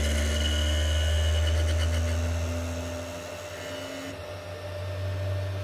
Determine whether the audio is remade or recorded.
recorded